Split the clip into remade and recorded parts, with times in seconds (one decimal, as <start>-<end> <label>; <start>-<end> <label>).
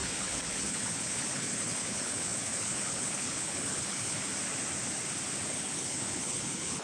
0.0-4.3 remade; 4.3-5.4 recorded; 5.4-6.8 remade